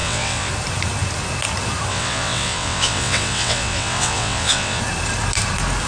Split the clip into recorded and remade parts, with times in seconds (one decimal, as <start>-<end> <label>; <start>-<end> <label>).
0.0-0.5 remade; 0.5-1.9 recorded; 1.9-4.8 remade; 4.8-5.9 recorded